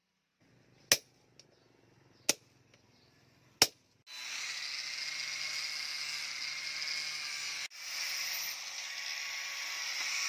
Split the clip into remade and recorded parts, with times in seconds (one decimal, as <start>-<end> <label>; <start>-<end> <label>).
0.0-10.3 recorded